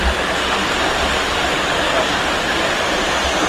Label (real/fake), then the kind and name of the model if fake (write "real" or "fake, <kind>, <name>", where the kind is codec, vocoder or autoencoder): real